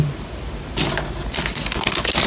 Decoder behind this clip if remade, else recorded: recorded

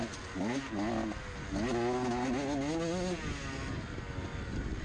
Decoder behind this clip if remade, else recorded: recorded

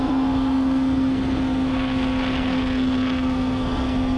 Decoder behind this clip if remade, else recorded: remade, codec, SNAC